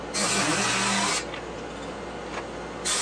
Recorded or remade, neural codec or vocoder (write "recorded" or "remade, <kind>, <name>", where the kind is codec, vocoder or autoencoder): recorded